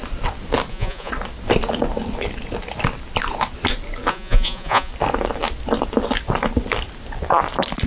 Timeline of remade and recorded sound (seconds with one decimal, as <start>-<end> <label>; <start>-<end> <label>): 0.0-0.7 recorded; 0.7-1.1 remade; 1.1-4.1 recorded; 4.1-4.9 remade; 4.9-7.9 recorded